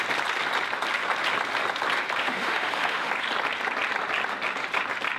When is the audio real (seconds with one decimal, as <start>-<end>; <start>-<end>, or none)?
0.0-2.2; 3.1-5.2